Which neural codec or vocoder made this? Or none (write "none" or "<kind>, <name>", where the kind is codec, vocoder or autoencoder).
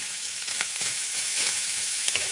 autoencoder, DAC-VAE